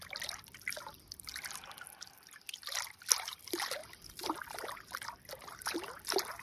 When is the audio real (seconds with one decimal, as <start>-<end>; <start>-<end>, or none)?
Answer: 0.0-6.4